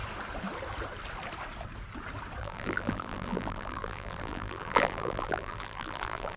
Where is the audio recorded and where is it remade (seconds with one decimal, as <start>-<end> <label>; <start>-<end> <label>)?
0.0-2.4 recorded; 2.4-6.4 remade